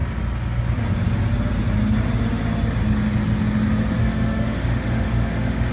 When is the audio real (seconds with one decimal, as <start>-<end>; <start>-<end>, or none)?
0.0-4.0